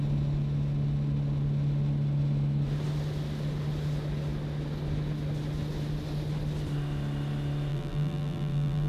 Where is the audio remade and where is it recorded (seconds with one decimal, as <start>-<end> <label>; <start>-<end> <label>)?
0.0-7.7 recorded; 7.7-8.9 remade